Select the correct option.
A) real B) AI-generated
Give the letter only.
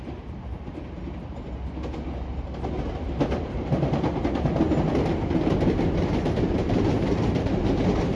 A